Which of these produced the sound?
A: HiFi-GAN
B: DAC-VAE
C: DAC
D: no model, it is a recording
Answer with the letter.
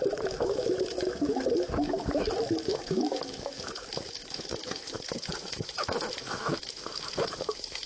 B